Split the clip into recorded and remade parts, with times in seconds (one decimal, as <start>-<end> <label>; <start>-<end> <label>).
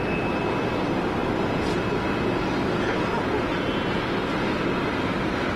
0.0-5.6 recorded